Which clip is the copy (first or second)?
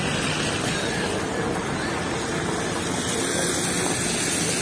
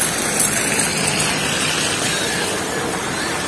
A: second